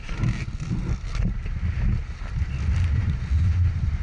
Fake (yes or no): no